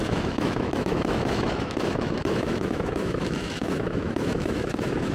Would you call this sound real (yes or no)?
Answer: no